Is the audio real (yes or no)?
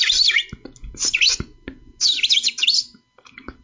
yes